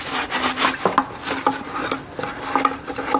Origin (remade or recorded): recorded